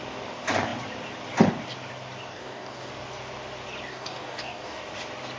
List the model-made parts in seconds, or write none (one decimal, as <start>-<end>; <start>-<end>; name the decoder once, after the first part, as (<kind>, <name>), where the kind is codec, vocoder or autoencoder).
2.3-2.9 (codec, DAC); 3.9-4.8